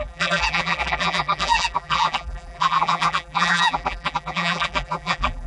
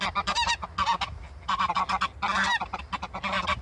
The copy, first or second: first